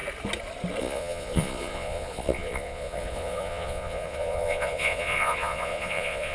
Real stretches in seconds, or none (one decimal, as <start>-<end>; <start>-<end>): 0.0-0.8